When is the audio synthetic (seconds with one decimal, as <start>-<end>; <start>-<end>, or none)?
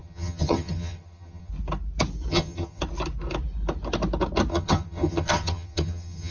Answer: 0.0-1.5; 2.3-2.8; 4.5-6.3